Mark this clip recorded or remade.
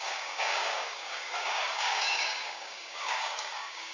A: remade